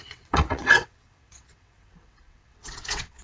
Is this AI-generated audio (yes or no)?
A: yes